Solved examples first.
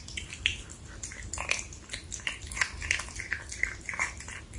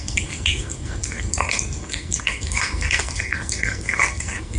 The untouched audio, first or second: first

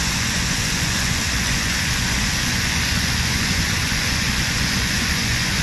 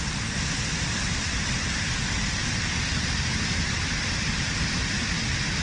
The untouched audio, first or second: second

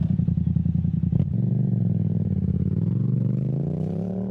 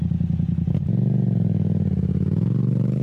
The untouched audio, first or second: second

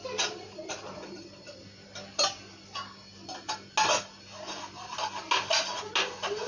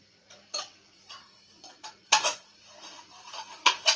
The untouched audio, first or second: first